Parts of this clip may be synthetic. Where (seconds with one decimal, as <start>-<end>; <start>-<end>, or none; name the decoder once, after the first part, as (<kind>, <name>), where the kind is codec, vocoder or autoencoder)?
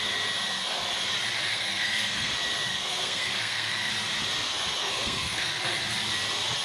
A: 1.5-2.3 (codec, SNAC); 2.7-3.9; 4.8-5.5